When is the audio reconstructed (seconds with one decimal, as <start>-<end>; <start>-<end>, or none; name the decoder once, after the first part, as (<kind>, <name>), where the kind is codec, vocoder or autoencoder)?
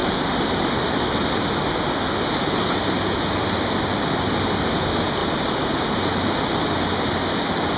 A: none